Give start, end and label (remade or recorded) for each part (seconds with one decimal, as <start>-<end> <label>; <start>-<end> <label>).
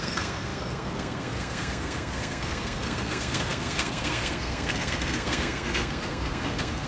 0.0-6.9 remade